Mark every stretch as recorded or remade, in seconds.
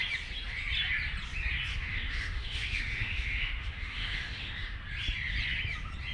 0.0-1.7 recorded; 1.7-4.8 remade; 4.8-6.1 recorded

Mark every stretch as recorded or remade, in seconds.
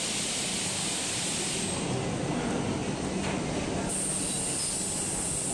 0.0-5.5 recorded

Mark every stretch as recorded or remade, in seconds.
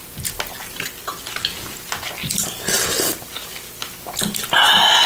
0.0-1.1 recorded; 1.1-2.8 remade; 2.8-3.4 recorded; 3.4-4.0 remade; 4.0-5.1 recorded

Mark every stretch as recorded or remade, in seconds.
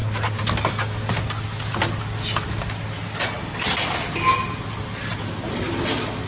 0.0-6.3 recorded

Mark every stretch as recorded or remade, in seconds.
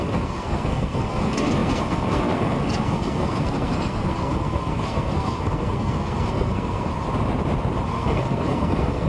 0.0-6.9 remade; 6.9-7.9 recorded; 7.9-9.1 remade